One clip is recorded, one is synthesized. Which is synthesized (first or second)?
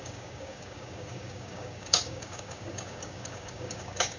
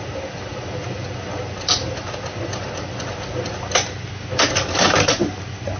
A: first